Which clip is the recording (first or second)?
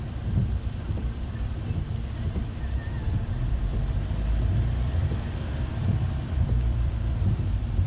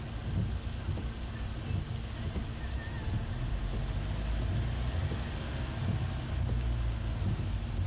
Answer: second